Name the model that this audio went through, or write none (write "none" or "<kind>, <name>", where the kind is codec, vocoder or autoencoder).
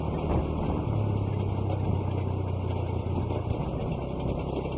none